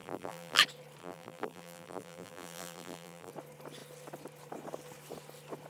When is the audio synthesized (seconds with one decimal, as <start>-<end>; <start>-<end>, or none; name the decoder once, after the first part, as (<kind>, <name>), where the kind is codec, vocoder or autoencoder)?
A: 0.0-0.6 (vocoder, BigVGAN v2); 1.0-3.3